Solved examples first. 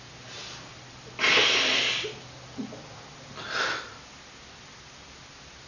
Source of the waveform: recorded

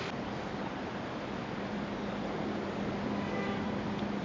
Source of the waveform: recorded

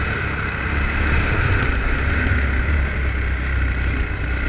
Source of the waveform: recorded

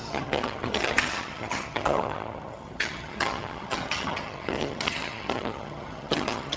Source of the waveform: remade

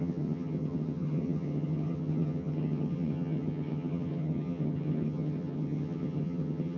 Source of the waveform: remade